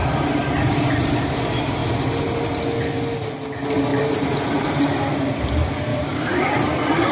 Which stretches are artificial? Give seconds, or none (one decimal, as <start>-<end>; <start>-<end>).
3.9-4.9; 5.9-6.4